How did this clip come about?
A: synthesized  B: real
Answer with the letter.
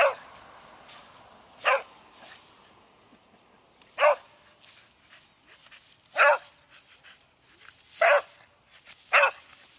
B